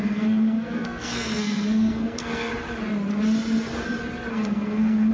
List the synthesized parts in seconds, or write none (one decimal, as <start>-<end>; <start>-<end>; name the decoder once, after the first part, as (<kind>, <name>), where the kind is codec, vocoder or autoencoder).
0.0-2.5 (codec, SNAC); 4.3-5.1